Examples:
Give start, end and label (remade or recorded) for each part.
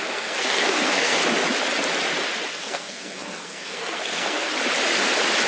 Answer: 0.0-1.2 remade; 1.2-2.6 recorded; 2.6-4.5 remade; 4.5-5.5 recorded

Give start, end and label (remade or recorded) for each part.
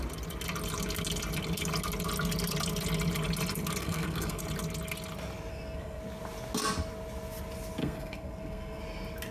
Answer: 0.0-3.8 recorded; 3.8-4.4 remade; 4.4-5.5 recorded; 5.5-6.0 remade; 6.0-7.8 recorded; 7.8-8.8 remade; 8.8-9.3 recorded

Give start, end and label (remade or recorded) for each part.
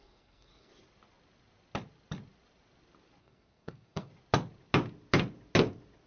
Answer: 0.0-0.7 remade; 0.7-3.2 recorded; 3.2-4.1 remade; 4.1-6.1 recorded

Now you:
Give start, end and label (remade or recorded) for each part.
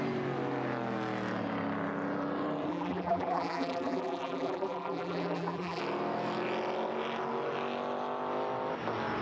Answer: 0.0-2.7 recorded; 2.7-5.8 remade; 5.8-9.2 recorded